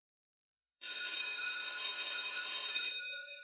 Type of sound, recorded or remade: remade